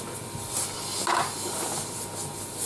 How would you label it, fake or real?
real